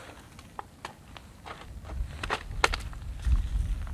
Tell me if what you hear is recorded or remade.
recorded